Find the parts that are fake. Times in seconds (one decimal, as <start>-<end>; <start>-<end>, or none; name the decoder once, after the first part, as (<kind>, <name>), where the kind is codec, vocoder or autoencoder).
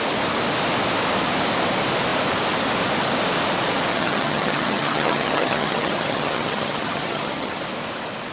3.9-7.6 (vocoder, HiFi-GAN)